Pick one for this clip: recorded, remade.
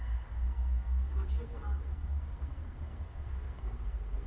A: remade